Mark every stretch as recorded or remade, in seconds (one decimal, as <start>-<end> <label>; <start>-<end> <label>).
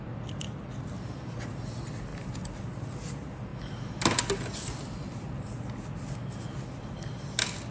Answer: 0.0-7.7 recorded